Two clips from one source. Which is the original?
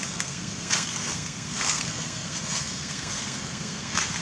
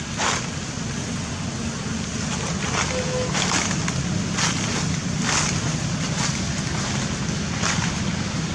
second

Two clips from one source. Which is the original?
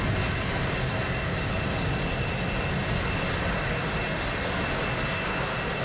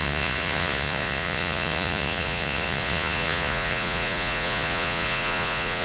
first